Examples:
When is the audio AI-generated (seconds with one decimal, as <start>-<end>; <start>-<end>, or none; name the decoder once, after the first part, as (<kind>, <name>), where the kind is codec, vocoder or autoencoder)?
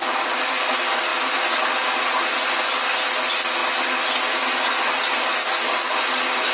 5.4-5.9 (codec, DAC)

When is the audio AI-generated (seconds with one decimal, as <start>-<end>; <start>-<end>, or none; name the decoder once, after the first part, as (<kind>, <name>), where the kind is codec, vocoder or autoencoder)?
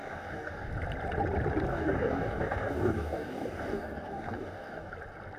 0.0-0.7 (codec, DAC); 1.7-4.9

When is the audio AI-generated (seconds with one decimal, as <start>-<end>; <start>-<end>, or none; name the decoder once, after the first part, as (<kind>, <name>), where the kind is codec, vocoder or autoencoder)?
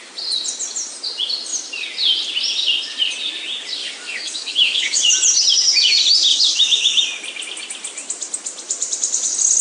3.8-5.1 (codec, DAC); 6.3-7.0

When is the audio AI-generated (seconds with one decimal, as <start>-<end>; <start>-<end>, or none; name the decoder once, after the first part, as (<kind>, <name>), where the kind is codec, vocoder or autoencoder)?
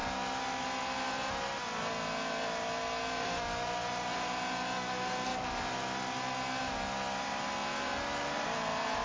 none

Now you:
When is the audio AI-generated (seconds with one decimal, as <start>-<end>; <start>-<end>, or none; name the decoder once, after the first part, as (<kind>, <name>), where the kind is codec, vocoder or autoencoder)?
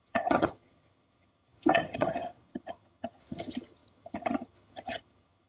0.0-5.5 (vocoder, HiFi-GAN)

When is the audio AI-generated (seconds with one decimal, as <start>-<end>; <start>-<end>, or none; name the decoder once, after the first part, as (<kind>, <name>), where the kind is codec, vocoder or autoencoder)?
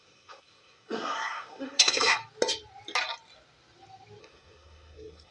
0.0-2.2 (codec, SNAC); 4.2-5.3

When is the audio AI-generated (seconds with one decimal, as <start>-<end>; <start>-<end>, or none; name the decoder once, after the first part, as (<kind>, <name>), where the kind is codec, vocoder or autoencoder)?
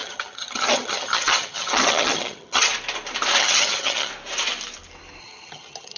0.0-2.7 (vocoder, HiFi-GAN); 3.4-4.1; 5.2-6.0